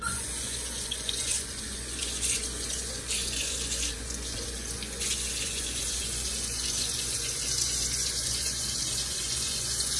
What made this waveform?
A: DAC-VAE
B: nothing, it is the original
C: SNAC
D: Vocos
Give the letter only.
D